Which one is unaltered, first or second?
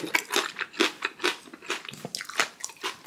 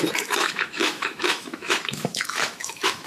first